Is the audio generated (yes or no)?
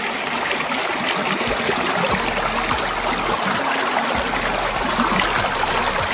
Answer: no